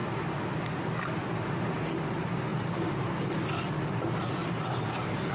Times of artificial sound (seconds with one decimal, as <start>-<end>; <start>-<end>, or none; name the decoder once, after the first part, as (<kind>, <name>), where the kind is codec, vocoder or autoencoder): 2.5-3.1 (vocoder, BigVGAN v2); 4.4-5.3